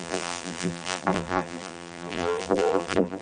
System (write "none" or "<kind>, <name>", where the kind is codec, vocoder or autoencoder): vocoder, BigVGAN v2